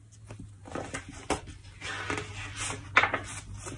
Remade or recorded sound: recorded